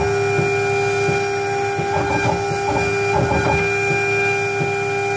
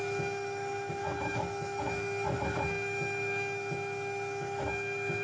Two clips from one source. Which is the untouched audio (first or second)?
first